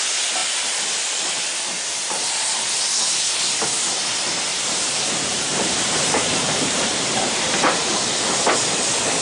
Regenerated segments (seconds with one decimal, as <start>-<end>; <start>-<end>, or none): 4.5-8.0

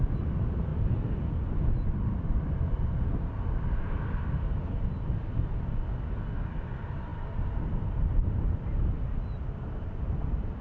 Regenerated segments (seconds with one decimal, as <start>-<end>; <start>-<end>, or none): 0.7-3.4

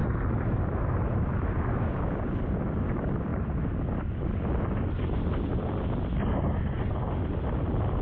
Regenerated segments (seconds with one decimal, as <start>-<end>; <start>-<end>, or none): 0.0-0.8

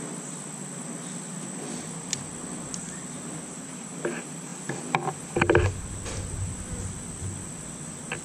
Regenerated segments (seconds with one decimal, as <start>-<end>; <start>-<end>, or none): 4.5-5.6

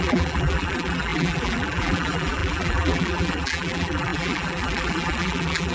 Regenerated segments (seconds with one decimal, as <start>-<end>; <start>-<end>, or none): 0.0-5.7